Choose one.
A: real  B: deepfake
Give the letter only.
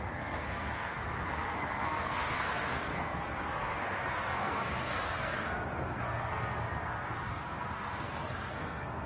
B